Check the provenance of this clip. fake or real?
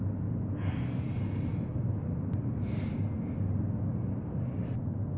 real